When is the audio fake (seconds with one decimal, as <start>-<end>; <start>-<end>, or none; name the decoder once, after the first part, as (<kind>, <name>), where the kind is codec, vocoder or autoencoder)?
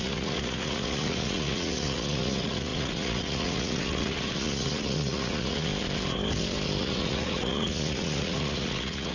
0.0-5.7 (vocoder, Vocos); 6.8-9.1